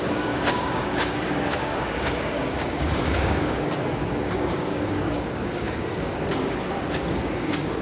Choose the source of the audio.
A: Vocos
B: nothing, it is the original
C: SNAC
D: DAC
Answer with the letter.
D